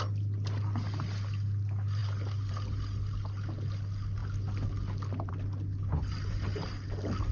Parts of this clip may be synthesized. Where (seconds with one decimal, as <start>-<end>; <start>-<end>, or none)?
none